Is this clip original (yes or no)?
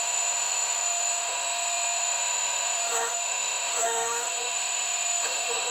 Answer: no